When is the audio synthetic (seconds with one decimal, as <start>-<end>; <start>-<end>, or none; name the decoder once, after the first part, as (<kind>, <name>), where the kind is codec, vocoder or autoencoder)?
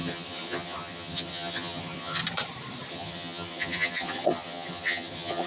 0.0-2.2 (vocoder, HiFi-GAN); 2.9-5.5